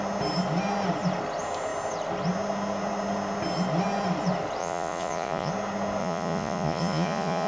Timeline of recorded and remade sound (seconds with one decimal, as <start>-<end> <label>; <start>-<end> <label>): 0.0-4.6 recorded; 4.6-5.5 remade; 5.5-6.0 recorded; 6.0-7.5 remade